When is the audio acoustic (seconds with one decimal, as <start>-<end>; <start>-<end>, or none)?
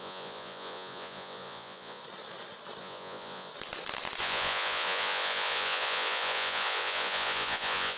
2.0-2.8; 3.5-4.2